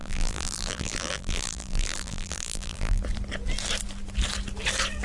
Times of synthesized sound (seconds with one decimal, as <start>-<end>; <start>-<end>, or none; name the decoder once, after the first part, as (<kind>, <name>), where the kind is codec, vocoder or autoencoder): 0.0-3.0 (vocoder, BigVGAN v2)